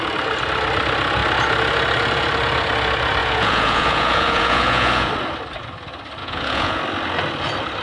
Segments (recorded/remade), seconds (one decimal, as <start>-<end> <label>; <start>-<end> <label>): 0.0-3.2 recorded; 3.2-5.1 remade; 5.1-6.2 recorded; 6.2-6.8 remade; 6.8-7.8 recorded